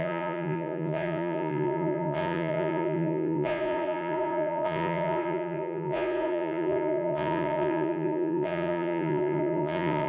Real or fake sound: fake